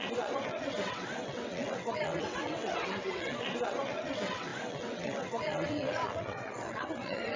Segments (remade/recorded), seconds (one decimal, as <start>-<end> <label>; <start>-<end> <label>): 0.0-7.4 remade